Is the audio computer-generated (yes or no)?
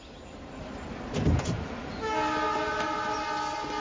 no